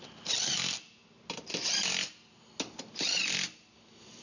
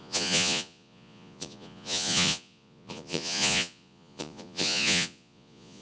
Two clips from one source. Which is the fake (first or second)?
second